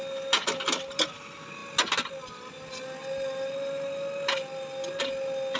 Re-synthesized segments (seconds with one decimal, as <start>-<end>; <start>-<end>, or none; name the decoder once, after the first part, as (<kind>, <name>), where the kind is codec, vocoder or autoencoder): none